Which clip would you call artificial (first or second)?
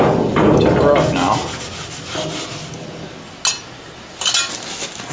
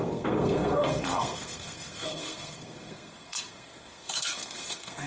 second